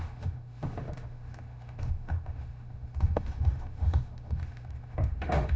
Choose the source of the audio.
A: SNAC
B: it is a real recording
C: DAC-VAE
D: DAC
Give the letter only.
C